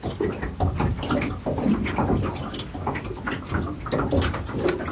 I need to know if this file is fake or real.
real